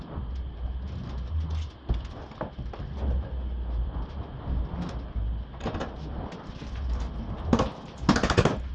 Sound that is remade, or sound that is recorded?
recorded